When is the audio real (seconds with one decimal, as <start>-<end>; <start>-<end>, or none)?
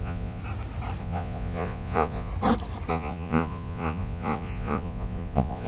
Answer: 0.4-1.0; 2.3-2.9